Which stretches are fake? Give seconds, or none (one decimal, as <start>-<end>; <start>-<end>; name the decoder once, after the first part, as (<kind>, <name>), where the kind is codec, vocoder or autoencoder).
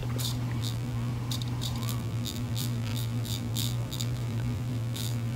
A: 0.6-1.1 (vocoder, BigVGAN v2); 1.8-5.4